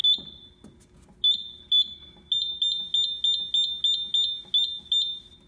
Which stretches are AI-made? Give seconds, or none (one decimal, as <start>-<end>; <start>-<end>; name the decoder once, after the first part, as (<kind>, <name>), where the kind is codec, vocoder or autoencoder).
none